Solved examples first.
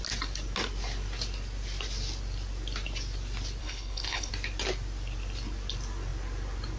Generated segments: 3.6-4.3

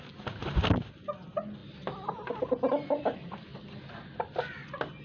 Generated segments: none